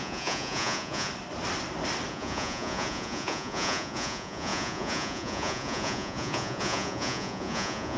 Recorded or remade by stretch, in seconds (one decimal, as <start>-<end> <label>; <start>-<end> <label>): 0.0-1.1 remade; 1.1-2.1 recorded; 2.1-8.0 remade